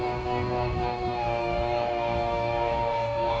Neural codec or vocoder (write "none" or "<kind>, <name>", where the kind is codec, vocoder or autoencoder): codec, DAC